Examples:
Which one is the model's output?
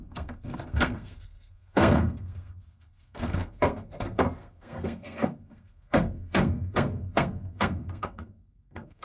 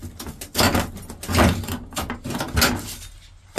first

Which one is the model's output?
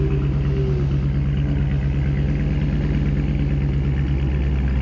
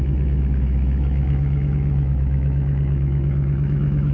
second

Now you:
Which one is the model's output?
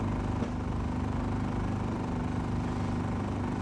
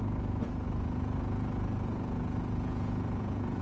second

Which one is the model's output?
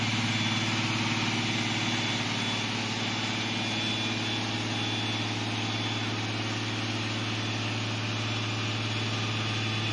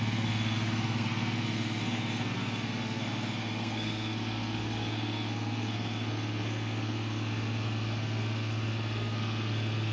second